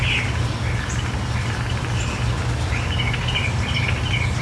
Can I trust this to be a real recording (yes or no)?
yes